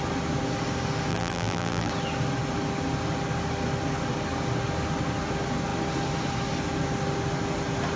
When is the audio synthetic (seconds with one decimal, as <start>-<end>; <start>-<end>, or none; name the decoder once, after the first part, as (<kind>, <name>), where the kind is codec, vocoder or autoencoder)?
1.1-1.9 (vocoder, BigVGAN v2)